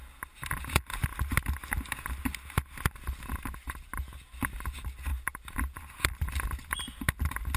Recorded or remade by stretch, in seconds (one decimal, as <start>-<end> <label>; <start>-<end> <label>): 0.0-5.1 recorded; 5.1-6.3 remade; 6.3-7.6 recorded